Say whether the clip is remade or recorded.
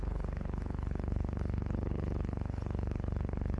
remade